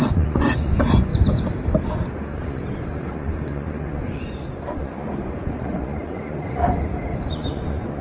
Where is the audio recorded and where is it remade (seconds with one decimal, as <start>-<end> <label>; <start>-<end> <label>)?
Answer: 0.0-1.1 remade; 1.1-2.1 recorded; 2.1-6.6 remade; 6.6-7.2 recorded; 7.2-8.0 remade

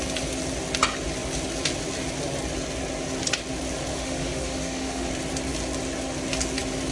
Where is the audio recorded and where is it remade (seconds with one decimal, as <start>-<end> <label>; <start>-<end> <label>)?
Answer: 0.0-3.9 recorded; 3.9-5.1 remade; 5.1-6.9 recorded

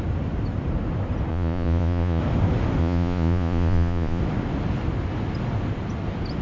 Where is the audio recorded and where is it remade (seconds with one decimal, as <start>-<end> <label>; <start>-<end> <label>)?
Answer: 0.0-1.3 recorded; 1.3-2.2 remade; 2.2-2.8 recorded; 2.8-4.2 remade; 4.2-6.4 recorded

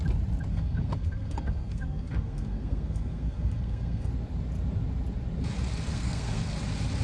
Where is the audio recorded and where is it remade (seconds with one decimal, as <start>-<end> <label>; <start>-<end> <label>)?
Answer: 0.0-0.5 recorded; 0.5-4.1 remade; 4.1-5.9 recorded; 5.9-6.4 remade; 6.4-7.0 recorded

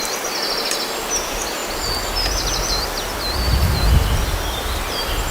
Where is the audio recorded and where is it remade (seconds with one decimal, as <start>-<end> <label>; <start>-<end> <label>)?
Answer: 0.0-5.3 recorded

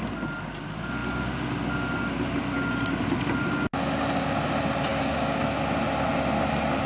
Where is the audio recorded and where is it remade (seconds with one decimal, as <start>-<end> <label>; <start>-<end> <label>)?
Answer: 0.0-4.9 recorded; 4.9-5.4 remade; 5.4-6.9 recorded

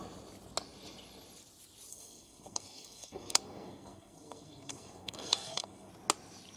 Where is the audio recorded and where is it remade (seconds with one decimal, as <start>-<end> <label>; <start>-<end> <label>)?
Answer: 0.0-1.9 recorded; 1.9-5.9 remade; 5.9-6.6 recorded